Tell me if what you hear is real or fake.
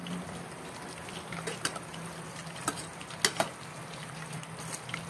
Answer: real